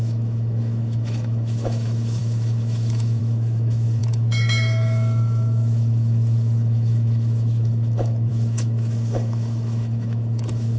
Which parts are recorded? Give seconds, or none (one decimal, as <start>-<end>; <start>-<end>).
none